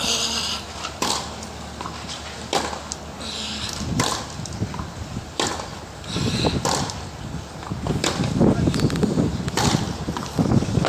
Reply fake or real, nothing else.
real